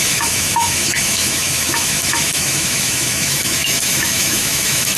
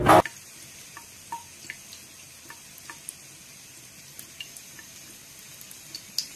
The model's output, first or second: first